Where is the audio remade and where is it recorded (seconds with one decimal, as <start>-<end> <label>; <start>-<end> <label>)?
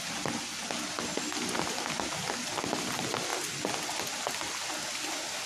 0.0-5.5 recorded